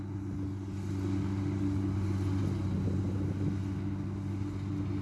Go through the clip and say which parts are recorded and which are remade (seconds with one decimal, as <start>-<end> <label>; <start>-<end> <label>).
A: 0.0-5.0 recorded